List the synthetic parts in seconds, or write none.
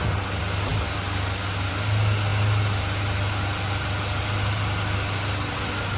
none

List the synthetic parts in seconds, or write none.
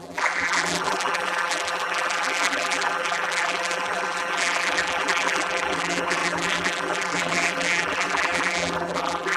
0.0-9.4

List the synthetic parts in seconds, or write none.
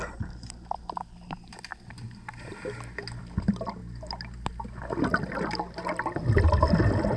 none